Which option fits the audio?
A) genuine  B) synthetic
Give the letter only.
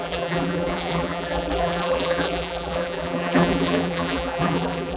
B